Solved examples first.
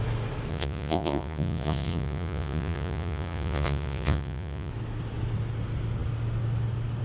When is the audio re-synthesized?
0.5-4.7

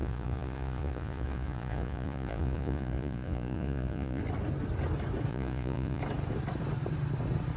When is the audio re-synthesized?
0.0-4.2; 5.3-6.0

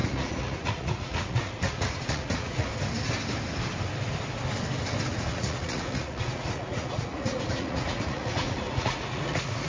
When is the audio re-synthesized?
0.0-2.7; 5.1-9.7

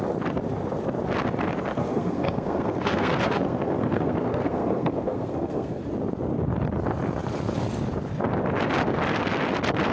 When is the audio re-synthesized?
1.7-5.8